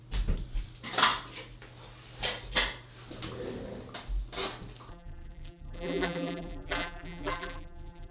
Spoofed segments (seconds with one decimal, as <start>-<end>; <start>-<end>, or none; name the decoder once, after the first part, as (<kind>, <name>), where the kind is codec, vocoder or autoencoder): 4.9-8.1 (vocoder, BigVGAN v2)